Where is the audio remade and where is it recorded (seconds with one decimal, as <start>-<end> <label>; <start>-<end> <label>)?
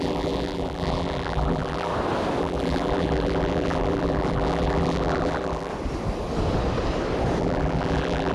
0.0-1.9 remade; 1.9-2.4 recorded; 2.4-5.7 remade; 5.7-7.4 recorded; 7.4-8.3 remade